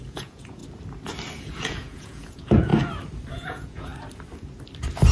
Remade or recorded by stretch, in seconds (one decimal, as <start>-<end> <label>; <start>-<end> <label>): 0.0-0.6 remade; 0.6-1.4 recorded; 1.4-2.7 remade; 2.7-3.3 recorded; 3.3-3.9 remade; 3.9-5.1 recorded